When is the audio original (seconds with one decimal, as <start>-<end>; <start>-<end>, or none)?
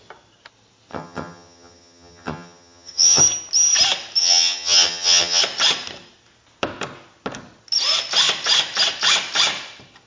0.0-0.9; 3.2-4.2; 5.4-10.1